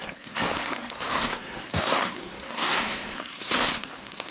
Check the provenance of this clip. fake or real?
fake